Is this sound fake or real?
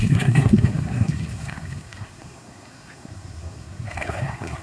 fake